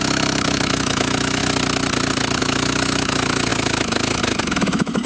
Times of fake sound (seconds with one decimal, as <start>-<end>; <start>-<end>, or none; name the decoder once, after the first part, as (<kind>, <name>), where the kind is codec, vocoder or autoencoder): 0.0-1.4 (autoencoder, DAC-VAE); 2.4-5.1